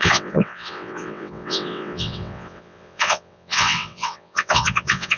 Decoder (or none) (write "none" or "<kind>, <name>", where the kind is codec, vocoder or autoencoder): vocoder, WaveNeXt